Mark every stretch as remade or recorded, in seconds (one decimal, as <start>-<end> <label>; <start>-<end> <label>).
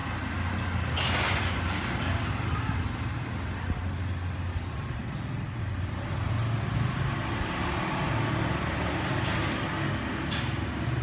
0.0-11.0 recorded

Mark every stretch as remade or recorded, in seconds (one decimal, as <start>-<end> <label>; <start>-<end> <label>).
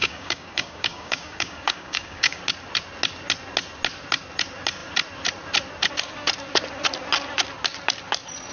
0.0-2.4 remade; 2.4-8.5 recorded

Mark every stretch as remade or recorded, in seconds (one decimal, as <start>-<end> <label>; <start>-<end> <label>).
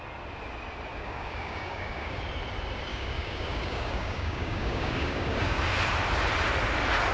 0.0-0.9 recorded; 0.9-2.2 remade; 2.2-2.9 recorded; 2.9-5.6 remade; 5.6-7.1 recorded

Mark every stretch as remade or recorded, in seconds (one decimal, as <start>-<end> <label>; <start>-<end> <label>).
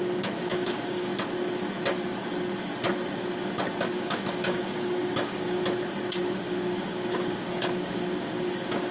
0.0-1.1 remade; 1.1-4.0 recorded; 4.0-5.6 remade; 5.6-6.2 recorded; 6.2-8.9 remade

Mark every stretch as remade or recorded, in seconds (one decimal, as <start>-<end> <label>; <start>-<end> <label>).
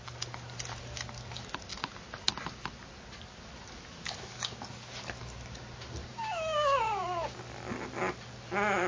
0.0-6.0 recorded; 6.0-7.4 remade; 7.4-8.9 recorded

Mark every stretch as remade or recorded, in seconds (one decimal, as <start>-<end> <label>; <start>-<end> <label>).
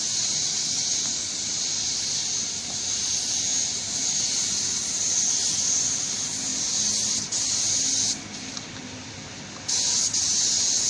0.0-10.9 recorded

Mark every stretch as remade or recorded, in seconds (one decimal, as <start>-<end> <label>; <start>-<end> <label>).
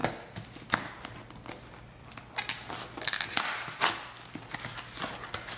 0.0-5.6 recorded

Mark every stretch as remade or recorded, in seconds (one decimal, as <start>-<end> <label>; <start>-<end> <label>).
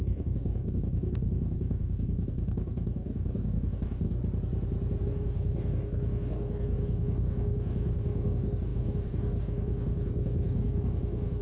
0.0-4.2 remade; 4.2-5.0 recorded; 5.0-11.4 remade